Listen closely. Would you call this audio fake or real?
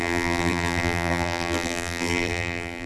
fake